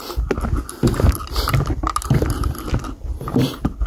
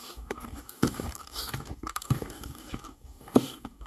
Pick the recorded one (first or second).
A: first